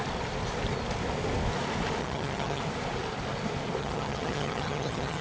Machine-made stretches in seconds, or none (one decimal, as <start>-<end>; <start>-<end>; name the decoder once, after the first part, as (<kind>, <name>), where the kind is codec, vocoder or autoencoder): 2.0-2.6 (vocoder, HiFi-GAN); 3.8-5.2